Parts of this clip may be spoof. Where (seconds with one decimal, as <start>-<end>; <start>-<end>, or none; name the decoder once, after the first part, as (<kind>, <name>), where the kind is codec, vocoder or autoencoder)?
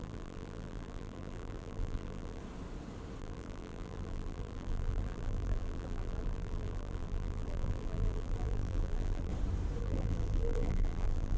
0.0-2.4 (vocoder, BigVGAN v2); 3.2-9.3; 9.8-11.4